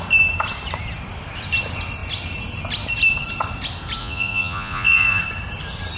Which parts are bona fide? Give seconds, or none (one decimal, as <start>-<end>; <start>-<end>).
0.0-4.0; 5.2-6.0